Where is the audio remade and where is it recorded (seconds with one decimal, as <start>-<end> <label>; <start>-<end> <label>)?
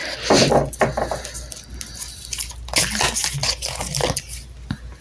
0.0-5.0 recorded